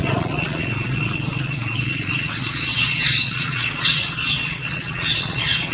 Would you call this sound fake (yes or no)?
yes